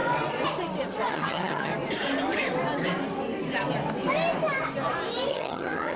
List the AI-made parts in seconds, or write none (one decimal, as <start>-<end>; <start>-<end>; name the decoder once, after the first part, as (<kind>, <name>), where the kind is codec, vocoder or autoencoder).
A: 1.1-1.7 (vocoder, HiFi-GAN); 5.3-6.0